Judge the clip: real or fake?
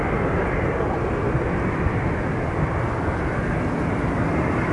real